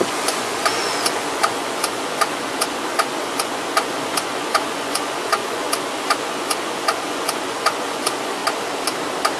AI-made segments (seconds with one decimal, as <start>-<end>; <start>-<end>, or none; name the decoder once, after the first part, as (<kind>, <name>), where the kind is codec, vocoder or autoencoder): 0.0-8.4 (vocoder, Vocos)